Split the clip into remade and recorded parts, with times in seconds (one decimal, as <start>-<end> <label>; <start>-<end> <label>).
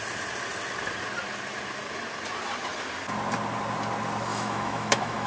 0.0-4.3 recorded; 4.3-5.3 remade